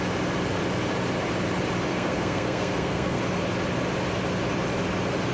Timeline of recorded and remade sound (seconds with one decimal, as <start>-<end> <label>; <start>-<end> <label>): 0.0-1.9 recorded; 1.9-3.2 remade; 3.2-5.3 recorded